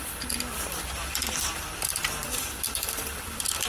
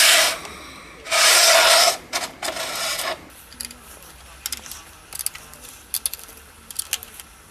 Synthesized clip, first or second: first